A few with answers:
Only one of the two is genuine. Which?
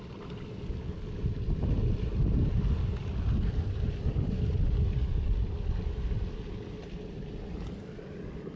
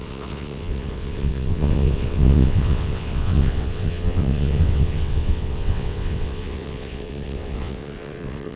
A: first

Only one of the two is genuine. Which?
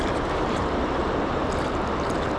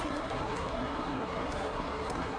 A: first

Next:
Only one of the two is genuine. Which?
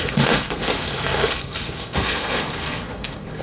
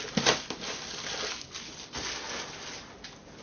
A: second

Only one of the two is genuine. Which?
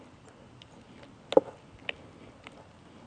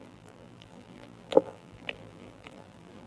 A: first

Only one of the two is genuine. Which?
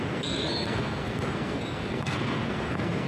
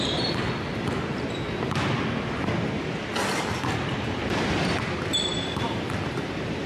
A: second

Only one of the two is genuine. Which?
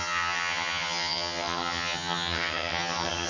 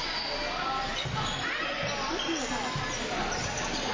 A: second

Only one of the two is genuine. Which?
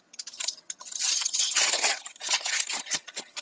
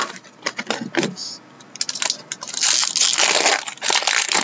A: second